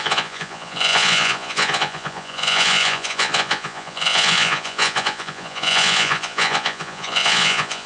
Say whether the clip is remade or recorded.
remade